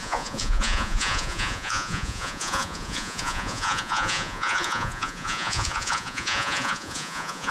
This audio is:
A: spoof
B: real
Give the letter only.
A